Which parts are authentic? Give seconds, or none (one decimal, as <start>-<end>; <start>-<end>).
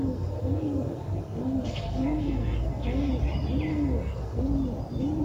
3.1-3.7; 4.4-5.2